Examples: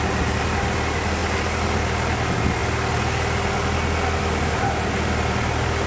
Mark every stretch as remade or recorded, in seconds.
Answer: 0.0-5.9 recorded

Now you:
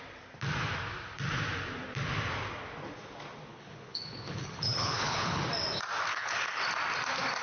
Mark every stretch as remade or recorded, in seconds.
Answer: 0.0-3.5 recorded; 3.5-5.4 remade; 5.4-6.1 recorded; 6.1-6.6 remade; 6.6-7.4 recorded

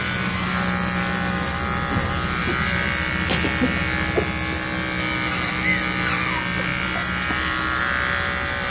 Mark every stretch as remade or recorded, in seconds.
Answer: 0.0-8.7 recorded

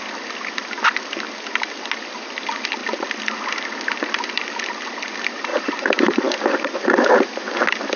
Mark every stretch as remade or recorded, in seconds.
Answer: 0.0-5.5 recorded; 5.5-6.2 remade; 6.2-8.0 recorded